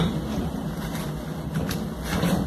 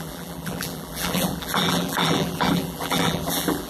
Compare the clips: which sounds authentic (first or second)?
first